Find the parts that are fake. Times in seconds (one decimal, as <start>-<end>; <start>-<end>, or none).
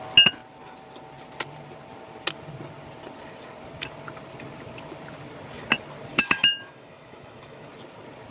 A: 6.1-7.7